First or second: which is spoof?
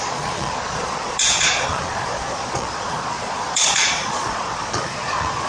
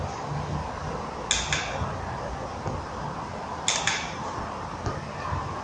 first